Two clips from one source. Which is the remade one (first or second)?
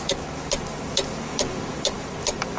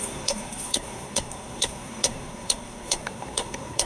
second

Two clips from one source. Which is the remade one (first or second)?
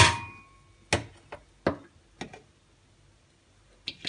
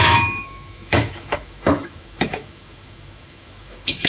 second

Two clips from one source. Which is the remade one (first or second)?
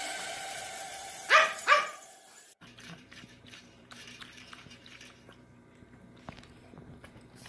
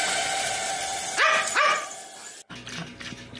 first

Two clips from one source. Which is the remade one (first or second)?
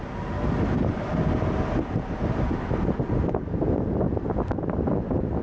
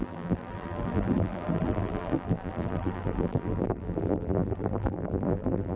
second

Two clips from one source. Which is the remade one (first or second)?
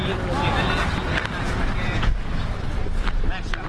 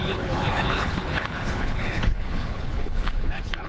second